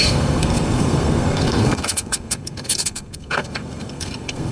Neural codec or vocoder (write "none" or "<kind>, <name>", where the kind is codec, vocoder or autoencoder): codec, SNAC